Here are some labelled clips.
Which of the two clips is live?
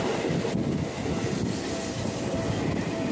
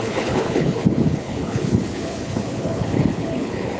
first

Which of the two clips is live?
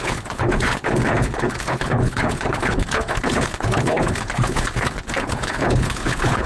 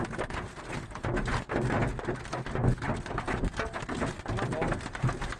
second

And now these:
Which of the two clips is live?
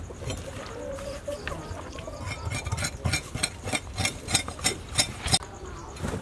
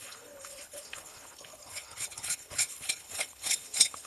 first